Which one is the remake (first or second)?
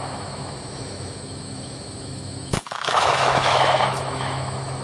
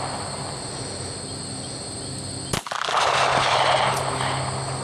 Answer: first